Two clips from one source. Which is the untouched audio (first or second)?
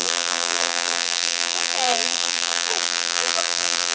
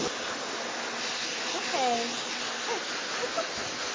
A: second